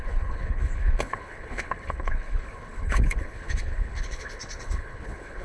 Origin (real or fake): fake